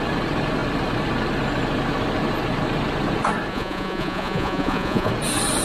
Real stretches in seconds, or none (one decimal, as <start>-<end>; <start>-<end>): 0.0-3.5; 5.1-5.6